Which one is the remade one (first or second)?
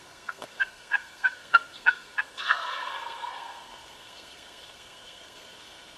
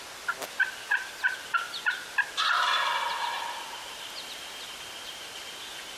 first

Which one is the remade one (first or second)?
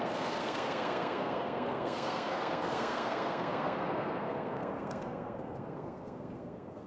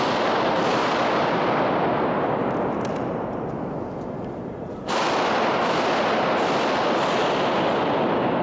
first